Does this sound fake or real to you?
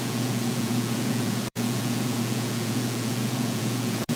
fake